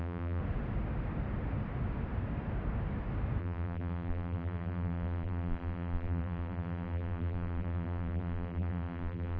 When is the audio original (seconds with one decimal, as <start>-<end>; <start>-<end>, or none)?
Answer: 0.4-3.4